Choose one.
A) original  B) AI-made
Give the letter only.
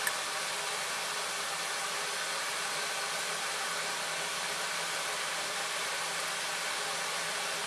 A